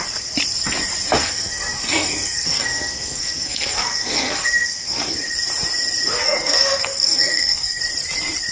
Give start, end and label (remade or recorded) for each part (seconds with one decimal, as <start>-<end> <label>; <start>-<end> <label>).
0.0-1.2 recorded; 1.2-5.1 remade; 5.1-6.2 recorded; 6.2-7.8 remade; 7.8-8.5 recorded